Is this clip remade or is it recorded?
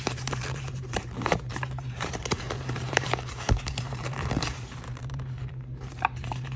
remade